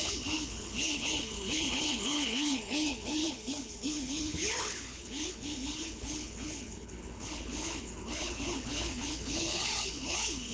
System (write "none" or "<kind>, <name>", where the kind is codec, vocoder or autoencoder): codec, HILCodec